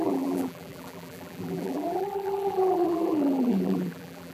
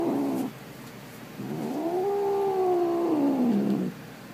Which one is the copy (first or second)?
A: first